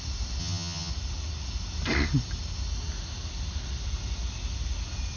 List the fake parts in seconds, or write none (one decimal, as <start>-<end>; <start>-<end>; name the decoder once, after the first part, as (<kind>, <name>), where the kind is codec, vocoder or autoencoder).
0.4-0.9 (vocoder, HiFi-GAN)